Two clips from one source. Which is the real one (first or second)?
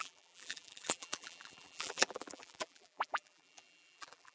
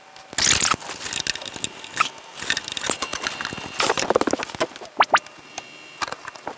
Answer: second